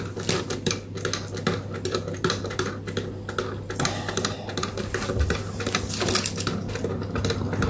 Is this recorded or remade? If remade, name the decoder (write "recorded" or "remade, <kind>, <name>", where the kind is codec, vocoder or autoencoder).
recorded